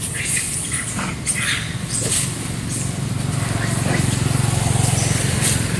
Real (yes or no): yes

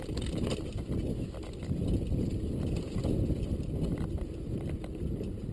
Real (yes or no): yes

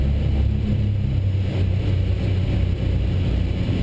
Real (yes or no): yes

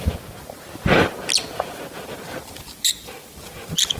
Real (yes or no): yes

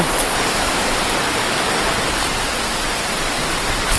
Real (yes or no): yes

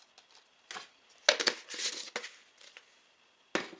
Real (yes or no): yes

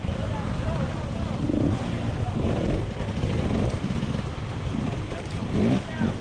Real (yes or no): no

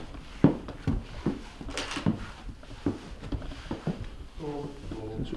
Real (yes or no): yes